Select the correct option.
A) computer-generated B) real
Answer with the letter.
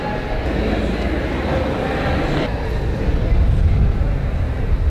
B